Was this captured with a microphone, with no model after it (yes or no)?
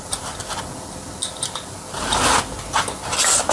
yes